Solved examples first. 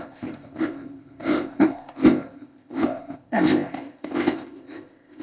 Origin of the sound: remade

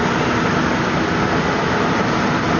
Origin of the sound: recorded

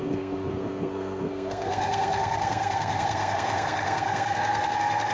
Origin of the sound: remade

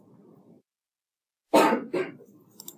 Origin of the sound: recorded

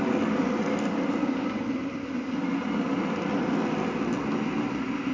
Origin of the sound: recorded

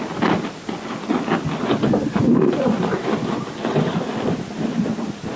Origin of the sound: recorded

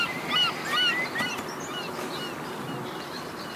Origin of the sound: recorded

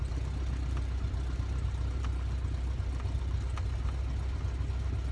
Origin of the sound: recorded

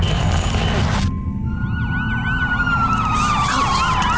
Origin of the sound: recorded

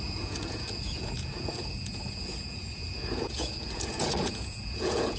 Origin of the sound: remade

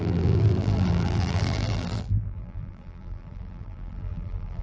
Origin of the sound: remade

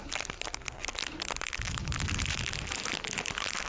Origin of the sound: recorded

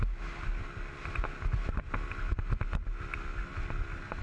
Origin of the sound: recorded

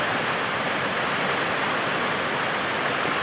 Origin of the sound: recorded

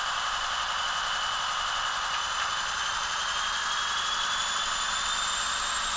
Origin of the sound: recorded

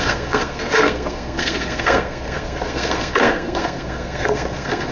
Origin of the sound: remade